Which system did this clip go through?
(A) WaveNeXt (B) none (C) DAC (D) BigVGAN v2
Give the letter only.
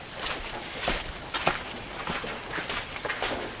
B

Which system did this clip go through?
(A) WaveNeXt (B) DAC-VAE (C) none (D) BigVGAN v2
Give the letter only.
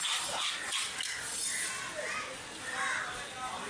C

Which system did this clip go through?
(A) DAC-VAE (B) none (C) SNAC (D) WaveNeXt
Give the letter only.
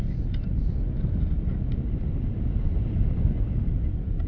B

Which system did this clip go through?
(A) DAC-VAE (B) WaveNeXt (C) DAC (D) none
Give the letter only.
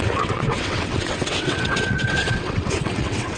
B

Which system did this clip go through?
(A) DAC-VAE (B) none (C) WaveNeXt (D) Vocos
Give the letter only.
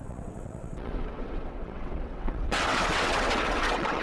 C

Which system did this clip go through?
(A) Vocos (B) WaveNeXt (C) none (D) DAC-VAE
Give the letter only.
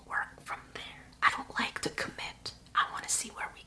C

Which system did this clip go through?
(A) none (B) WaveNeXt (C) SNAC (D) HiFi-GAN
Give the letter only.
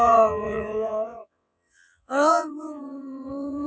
B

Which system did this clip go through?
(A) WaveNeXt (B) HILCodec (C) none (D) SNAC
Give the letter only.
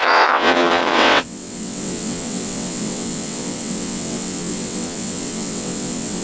A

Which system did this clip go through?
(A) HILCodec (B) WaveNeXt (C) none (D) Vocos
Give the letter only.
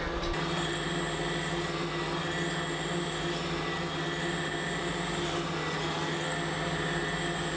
C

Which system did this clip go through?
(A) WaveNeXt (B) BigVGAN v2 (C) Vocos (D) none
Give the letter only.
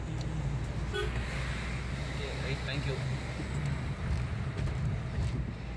D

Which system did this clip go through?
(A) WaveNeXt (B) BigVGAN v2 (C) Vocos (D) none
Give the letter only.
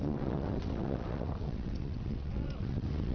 A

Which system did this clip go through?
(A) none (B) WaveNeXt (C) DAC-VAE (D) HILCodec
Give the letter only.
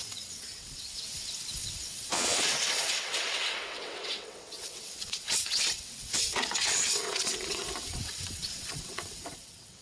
B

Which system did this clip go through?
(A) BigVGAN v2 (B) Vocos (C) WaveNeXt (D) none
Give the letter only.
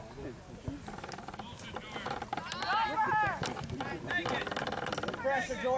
D